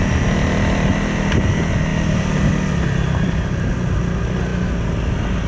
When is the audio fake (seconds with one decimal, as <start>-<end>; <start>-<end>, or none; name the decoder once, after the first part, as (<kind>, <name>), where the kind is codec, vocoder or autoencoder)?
none